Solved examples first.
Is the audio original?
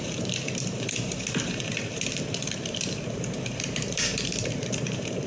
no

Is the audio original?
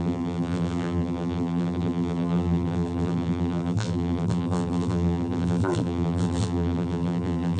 no